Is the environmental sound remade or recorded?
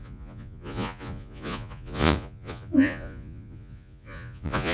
remade